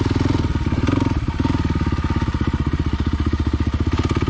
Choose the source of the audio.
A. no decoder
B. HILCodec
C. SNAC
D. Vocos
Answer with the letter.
A